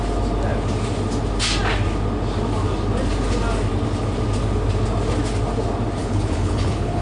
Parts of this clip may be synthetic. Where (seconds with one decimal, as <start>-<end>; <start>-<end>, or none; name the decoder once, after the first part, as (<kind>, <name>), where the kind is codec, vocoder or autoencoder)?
6.0-7.0 (codec, HILCodec)